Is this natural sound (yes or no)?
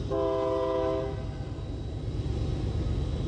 yes